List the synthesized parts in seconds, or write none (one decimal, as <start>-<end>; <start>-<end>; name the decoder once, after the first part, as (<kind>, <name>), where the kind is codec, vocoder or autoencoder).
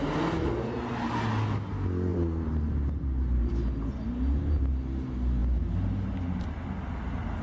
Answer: 2.1-4.7 (vocoder, BigVGAN v2)